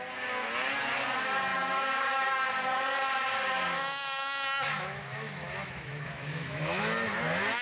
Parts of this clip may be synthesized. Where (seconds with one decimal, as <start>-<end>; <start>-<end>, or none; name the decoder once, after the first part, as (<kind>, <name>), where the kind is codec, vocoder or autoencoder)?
1.5-2.5 (autoencoder, DAC-VAE); 3.8-6.8